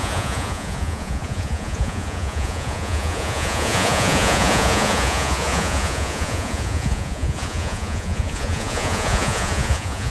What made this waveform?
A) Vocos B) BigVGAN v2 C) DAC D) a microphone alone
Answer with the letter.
A